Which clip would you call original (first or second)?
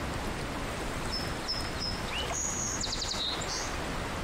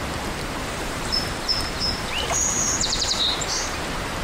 first